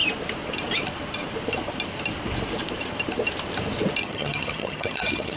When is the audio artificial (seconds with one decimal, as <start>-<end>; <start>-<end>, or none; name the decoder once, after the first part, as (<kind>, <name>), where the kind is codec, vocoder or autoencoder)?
4.0-5.4 (vocoder, HiFi-GAN)